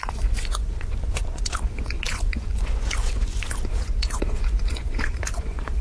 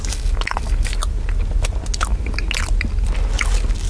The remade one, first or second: first